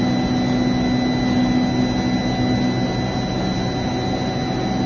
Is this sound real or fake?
real